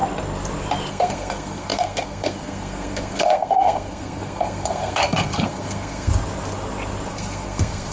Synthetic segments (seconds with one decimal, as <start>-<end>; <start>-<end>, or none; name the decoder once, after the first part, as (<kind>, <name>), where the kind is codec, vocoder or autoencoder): 0.9-6.1 (codec, SNAC); 7.1-7.9